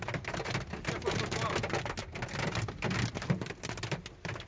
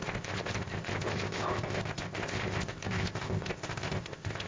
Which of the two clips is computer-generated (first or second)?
second